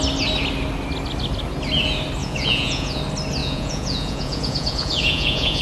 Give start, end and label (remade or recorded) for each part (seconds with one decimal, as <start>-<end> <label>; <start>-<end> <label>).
0.0-2.2 recorded; 2.2-3.0 remade; 3.0-3.4 recorded; 3.4-5.6 remade